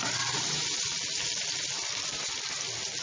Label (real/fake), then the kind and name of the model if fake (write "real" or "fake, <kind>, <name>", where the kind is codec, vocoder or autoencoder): real